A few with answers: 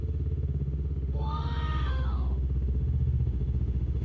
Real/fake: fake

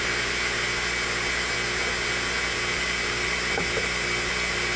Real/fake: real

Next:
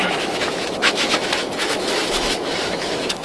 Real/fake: fake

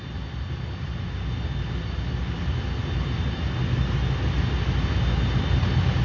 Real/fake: real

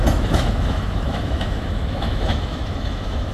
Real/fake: fake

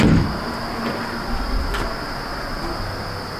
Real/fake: real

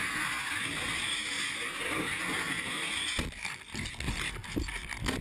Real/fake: real